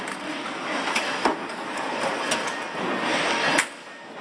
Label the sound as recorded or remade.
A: recorded